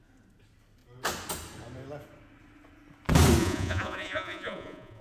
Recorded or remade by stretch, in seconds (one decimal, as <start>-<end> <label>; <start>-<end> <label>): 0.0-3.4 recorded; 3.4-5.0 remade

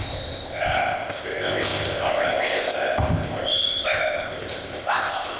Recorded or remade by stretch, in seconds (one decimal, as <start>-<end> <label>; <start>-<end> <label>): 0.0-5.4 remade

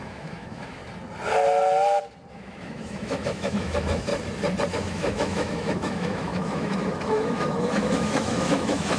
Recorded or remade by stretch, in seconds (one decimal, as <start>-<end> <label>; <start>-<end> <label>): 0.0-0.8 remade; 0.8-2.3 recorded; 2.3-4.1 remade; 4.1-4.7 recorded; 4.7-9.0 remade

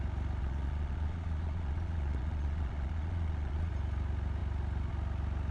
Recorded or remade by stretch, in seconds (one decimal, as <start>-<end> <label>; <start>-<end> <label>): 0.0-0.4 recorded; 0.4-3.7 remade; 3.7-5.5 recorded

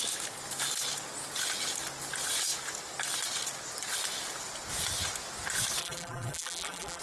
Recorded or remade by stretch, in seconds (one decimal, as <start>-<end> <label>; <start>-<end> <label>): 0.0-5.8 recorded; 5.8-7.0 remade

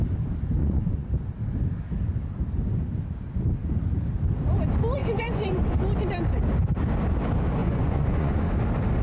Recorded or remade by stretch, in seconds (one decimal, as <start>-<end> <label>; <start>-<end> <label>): 0.0-0.6 recorded; 0.6-1.1 remade; 1.1-5.0 recorded; 5.0-5.8 remade; 5.8-7.6 recorded; 7.6-8.5 remade; 8.5-9.0 recorded